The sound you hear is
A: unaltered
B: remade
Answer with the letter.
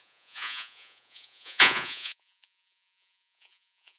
B